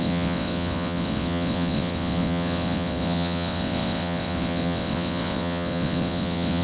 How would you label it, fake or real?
fake